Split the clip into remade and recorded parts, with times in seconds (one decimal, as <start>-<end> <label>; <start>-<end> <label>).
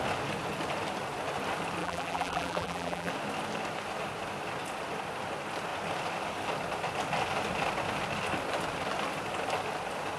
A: 0.0-1.8 recorded; 1.8-3.1 remade; 3.1-10.2 recorded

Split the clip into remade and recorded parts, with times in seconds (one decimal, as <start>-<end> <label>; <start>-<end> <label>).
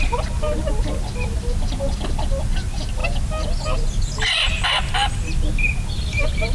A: 0.0-6.5 recorded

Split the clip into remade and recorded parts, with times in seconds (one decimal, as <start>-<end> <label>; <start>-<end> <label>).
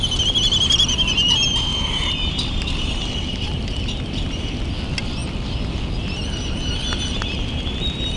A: 0.0-5.2 remade; 5.2-7.6 recorded; 7.6-8.2 remade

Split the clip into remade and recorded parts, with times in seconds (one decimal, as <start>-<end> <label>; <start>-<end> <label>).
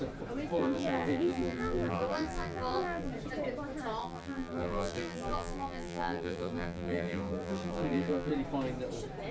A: 0.0-0.5 recorded; 0.5-3.1 remade; 3.1-4.0 recorded; 4.0-8.3 remade; 8.3-9.3 recorded